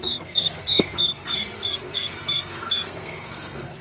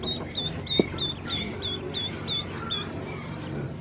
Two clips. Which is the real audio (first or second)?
second